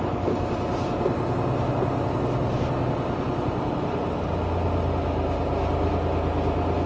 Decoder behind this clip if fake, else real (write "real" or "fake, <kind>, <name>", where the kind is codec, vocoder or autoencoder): real